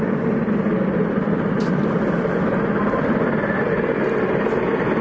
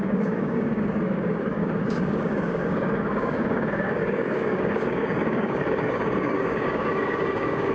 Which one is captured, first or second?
first